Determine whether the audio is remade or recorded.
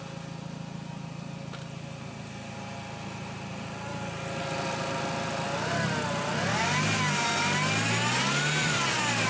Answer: recorded